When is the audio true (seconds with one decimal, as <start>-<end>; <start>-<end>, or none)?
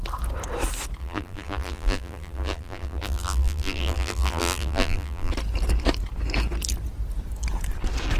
0.0-1.0; 5.3-8.2